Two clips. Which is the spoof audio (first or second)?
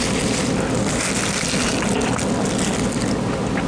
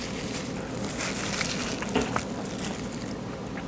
second